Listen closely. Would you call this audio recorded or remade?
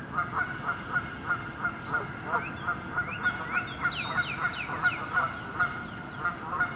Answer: recorded